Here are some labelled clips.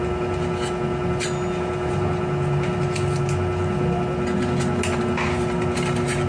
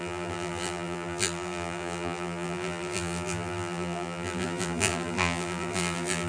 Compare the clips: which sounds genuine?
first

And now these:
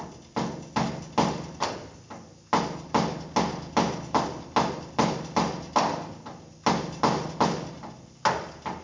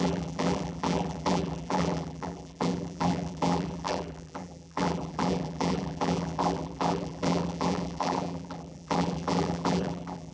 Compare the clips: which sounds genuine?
first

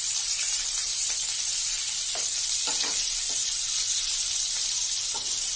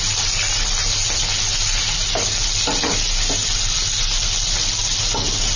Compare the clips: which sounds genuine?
second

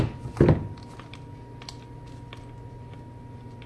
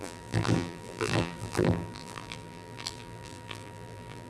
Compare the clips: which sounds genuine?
first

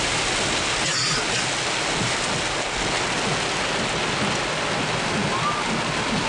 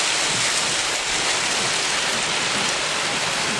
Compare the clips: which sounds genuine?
first